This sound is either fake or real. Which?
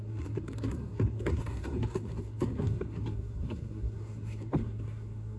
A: fake